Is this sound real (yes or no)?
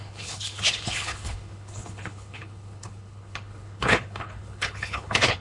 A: no